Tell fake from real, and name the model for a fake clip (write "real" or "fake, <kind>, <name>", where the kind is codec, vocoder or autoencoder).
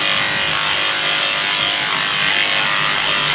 real